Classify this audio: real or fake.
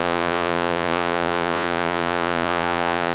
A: fake